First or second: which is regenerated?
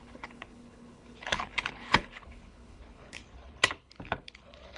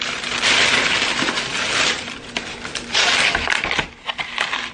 first